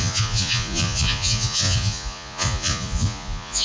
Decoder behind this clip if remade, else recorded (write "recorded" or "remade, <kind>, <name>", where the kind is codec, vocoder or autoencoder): remade, vocoder, Vocos